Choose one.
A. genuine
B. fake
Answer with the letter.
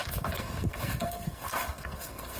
B